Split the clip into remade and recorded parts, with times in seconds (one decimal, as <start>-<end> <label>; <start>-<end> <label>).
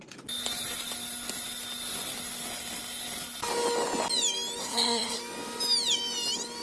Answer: 0.0-4.6 recorded; 4.6-5.2 remade; 5.2-6.6 recorded